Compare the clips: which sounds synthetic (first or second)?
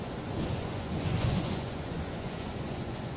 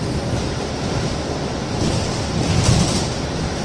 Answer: first